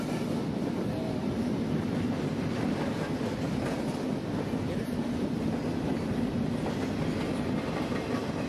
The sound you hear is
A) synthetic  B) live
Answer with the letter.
B